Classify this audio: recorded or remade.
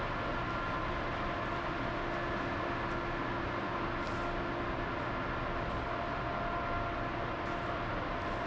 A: recorded